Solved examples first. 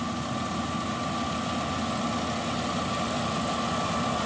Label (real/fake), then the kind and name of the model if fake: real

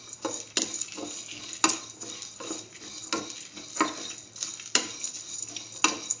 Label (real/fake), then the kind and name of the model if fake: real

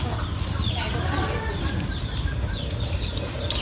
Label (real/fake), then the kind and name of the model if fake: real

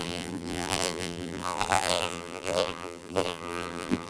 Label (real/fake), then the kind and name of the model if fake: fake, vocoder, BigVGAN v2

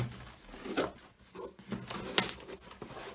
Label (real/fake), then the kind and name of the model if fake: real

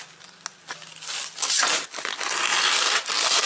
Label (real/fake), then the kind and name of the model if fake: real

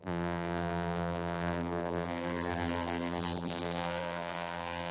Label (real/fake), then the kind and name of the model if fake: fake, vocoder, BigVGAN v2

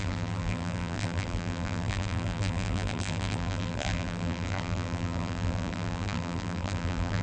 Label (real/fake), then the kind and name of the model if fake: fake, vocoder, BigVGAN v2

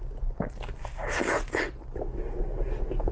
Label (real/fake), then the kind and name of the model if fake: real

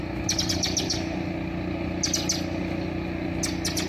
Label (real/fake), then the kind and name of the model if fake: real